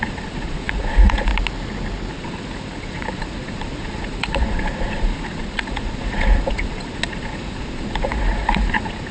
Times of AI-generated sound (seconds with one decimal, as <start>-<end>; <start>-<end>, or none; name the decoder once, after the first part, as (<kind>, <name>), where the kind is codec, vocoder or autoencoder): 0.0-1.3 (vocoder, Vocos); 2.1-9.1